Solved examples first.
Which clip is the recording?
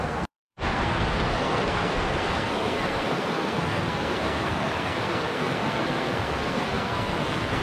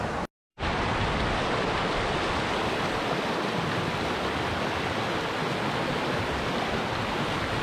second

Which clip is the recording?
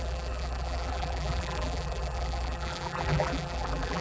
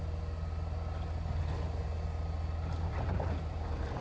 second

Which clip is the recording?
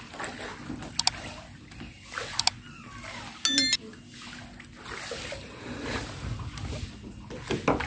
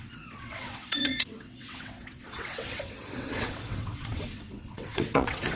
first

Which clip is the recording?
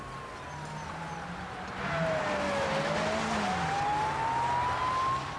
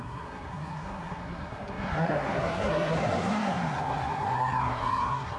first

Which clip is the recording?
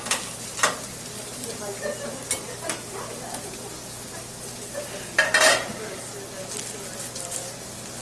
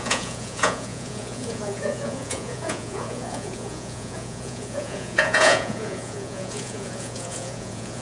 first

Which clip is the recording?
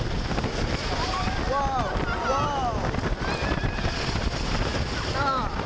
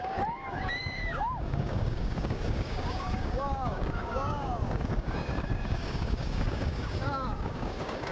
first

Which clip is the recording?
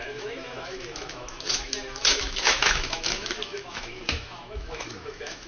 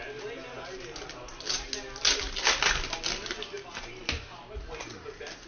second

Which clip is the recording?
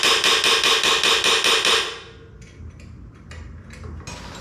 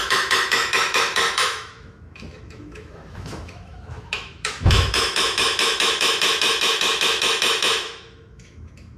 first